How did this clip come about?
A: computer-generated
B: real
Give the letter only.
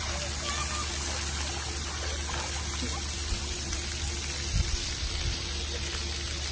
B